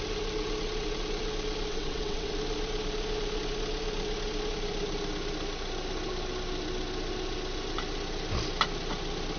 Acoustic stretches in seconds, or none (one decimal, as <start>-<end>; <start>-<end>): 0.0-1.7; 2.3-9.4